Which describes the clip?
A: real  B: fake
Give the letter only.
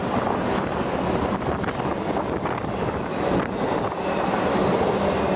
A